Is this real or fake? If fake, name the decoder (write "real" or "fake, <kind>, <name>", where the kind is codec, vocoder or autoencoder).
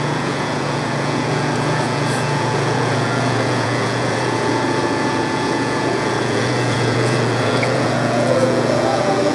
fake, vocoder, Vocos